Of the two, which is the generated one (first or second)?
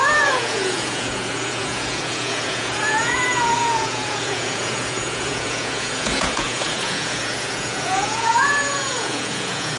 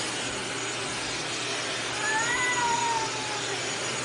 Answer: first